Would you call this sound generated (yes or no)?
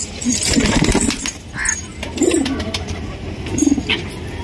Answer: no